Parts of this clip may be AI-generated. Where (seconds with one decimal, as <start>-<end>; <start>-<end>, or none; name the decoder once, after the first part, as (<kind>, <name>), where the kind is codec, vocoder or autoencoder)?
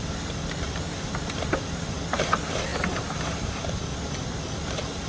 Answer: none